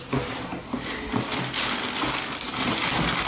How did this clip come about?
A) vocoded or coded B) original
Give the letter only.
B